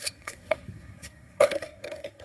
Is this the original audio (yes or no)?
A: no